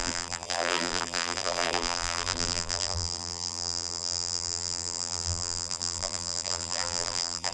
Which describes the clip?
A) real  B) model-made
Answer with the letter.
B